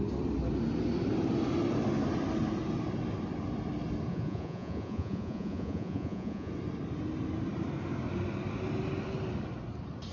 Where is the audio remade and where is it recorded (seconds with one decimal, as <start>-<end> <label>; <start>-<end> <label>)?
0.0-4.1 recorded; 4.1-6.5 remade; 6.5-10.1 recorded